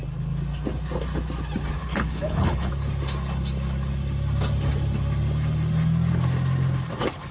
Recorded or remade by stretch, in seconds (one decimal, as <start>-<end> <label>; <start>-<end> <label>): 0.0-1.8 recorded; 1.8-2.7 remade; 2.7-7.3 recorded